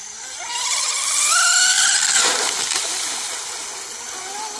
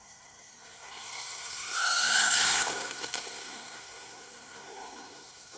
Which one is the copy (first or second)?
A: second